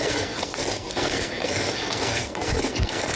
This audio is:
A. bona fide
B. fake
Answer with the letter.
B